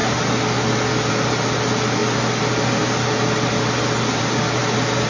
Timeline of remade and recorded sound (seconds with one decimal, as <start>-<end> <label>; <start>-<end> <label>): 0.0-5.1 recorded